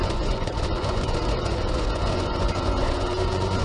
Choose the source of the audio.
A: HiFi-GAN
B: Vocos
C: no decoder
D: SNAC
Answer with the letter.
B